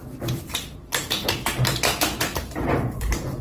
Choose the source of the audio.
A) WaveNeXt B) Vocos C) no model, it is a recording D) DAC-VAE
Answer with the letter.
C